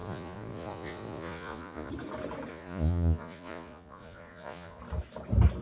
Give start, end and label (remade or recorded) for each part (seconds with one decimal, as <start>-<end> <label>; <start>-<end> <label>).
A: 0.0-1.9 remade; 1.9-2.5 recorded; 2.5-4.8 remade; 4.8-5.6 recorded